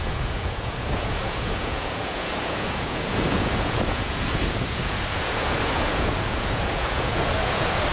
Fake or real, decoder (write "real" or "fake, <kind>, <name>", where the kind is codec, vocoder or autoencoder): fake, vocoder, Vocos